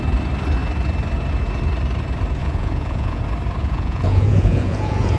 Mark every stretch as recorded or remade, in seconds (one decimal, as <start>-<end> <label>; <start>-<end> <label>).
0.0-2.4 recorded; 2.4-3.2 remade; 3.2-3.6 recorded; 3.6-5.2 remade